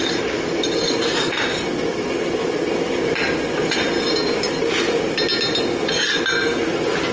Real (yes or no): yes